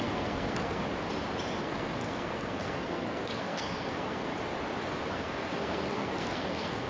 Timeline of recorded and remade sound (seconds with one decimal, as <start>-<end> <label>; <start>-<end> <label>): 0.0-0.8 remade; 0.8-1.6 recorded; 1.6-4.3 remade; 4.3-5.1 recorded; 5.1-6.9 remade

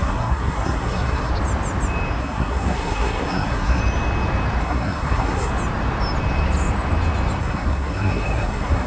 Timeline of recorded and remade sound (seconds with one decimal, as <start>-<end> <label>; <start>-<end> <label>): 0.0-1.3 remade; 1.3-2.2 recorded; 2.2-3.8 remade; 3.8-4.6 recorded; 4.6-5.5 remade; 5.5-7.4 recorded; 7.4-8.9 remade